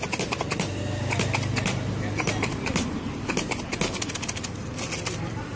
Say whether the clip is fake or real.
real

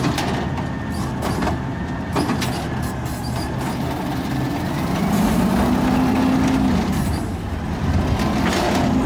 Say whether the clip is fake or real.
real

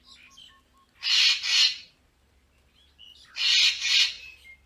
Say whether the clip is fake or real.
real